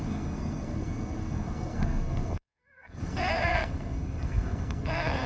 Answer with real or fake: fake